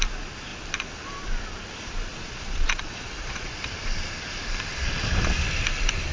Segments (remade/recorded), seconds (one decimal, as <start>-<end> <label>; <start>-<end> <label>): 0.0-2.1 recorded; 2.1-3.5 remade; 3.5-6.1 recorded